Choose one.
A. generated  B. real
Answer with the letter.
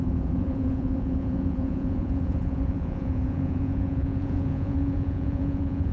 A